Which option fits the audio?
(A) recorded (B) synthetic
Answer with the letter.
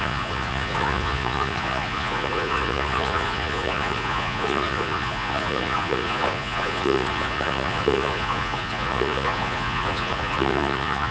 B